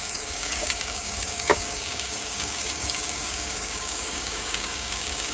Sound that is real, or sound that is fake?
fake